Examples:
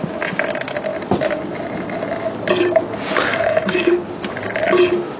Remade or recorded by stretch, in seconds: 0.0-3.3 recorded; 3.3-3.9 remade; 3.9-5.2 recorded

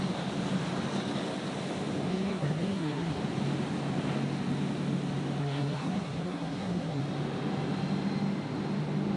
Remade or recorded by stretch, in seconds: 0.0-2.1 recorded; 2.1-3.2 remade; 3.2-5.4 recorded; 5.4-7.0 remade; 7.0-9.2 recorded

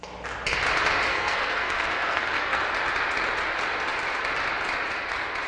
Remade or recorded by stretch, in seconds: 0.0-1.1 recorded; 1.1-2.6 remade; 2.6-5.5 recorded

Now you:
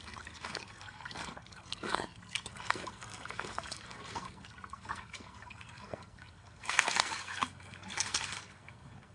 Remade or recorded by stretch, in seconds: 0.0-9.1 remade